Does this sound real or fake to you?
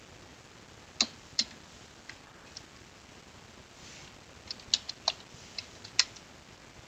real